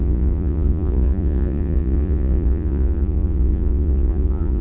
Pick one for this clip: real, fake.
fake